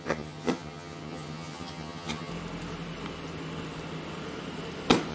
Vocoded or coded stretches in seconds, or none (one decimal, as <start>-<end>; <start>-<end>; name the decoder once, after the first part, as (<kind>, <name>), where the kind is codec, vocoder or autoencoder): 0.0-2.3 (vocoder, HiFi-GAN)